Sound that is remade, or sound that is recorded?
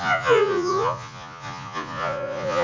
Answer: remade